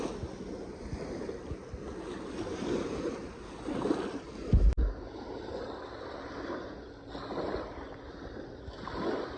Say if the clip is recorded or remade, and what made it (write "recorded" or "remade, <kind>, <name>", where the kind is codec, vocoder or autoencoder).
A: recorded